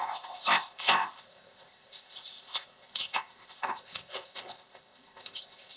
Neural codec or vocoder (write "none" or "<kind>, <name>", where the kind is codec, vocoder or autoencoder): codec, ZipCodec